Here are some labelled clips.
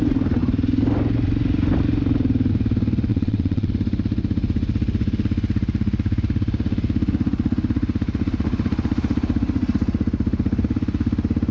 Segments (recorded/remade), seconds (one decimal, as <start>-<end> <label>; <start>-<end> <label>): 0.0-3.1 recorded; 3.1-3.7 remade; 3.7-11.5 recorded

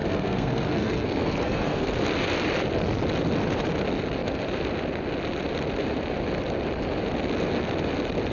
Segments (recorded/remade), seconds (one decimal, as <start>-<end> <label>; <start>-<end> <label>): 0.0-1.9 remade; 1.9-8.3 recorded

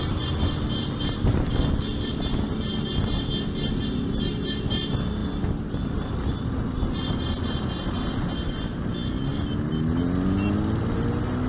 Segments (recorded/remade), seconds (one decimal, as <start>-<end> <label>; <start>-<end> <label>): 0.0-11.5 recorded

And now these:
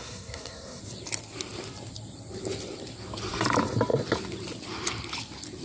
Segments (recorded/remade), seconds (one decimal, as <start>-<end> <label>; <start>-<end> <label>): 0.0-0.8 remade; 0.8-5.6 recorded

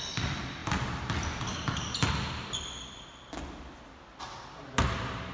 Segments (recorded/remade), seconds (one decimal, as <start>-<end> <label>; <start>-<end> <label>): 0.0-5.3 recorded

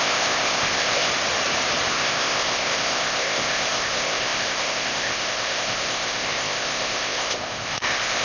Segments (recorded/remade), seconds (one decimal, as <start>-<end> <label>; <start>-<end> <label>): 0.0-1.1 remade; 1.1-1.9 recorded; 1.9-8.2 remade